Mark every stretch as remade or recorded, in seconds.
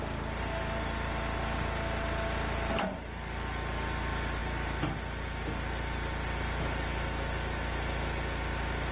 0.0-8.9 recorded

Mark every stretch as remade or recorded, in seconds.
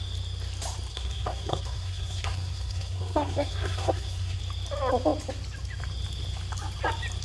0.0-0.9 recorded; 0.9-4.4 remade; 4.4-7.2 recorded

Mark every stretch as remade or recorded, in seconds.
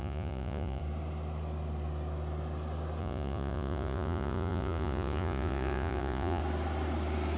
0.0-0.8 remade; 0.8-3.0 recorded; 3.0-6.4 remade; 6.4-7.4 recorded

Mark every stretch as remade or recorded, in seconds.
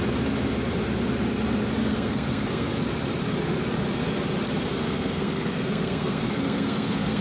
0.0-1.8 recorded; 1.8-2.8 remade; 2.8-4.7 recorded; 4.7-7.2 remade